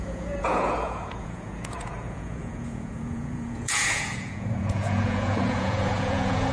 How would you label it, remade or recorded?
remade